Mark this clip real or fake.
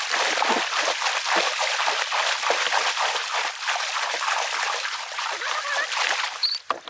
real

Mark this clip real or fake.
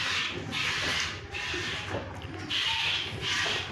real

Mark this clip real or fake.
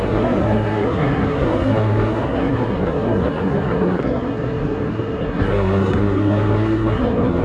fake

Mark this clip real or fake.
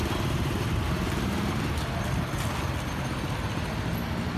real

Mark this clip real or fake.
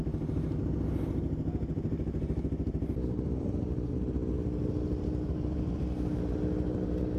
real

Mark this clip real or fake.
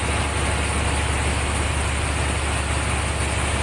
real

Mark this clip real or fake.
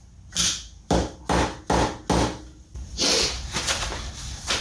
real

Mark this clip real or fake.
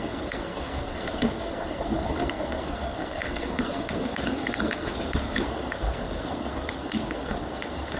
fake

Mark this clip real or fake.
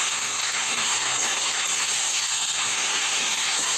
fake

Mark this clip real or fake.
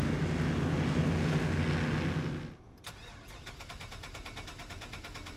real